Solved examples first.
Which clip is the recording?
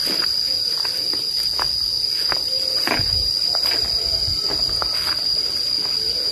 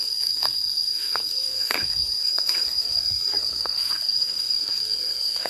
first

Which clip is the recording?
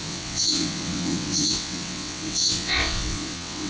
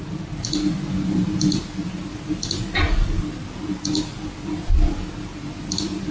second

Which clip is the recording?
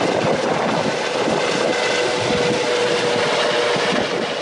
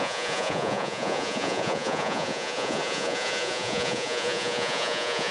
first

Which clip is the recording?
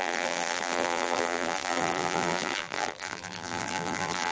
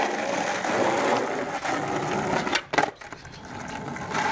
second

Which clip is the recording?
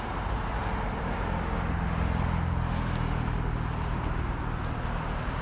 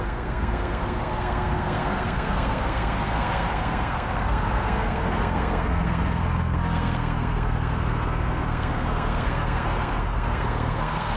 first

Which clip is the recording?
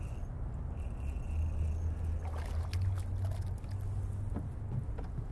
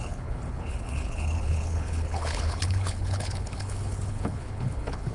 first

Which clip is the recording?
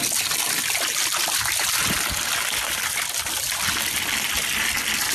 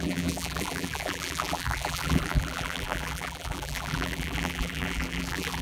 first